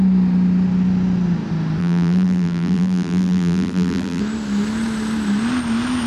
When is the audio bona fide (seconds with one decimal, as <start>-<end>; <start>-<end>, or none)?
0.0-1.8; 4.2-6.1